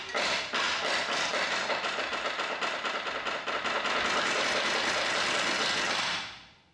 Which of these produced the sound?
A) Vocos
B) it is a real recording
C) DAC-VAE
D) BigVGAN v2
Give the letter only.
B